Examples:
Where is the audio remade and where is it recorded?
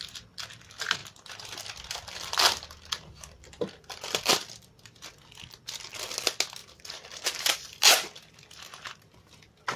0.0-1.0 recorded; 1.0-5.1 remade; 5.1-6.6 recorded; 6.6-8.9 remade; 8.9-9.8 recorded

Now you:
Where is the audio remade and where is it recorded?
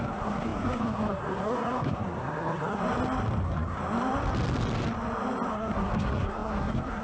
0.0-2.8 remade; 2.8-3.4 recorded; 3.4-3.8 remade; 3.8-5.5 recorded; 5.5-7.0 remade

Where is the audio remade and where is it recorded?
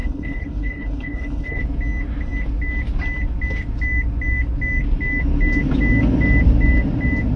0.0-1.6 remade; 1.6-7.4 recorded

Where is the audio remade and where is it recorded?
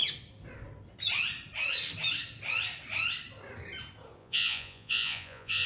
0.0-4.2 recorded; 4.2-5.7 remade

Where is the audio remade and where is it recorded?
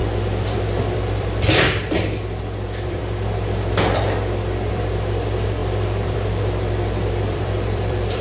0.0-3.0 remade; 3.0-4.7 recorded; 4.7-8.2 remade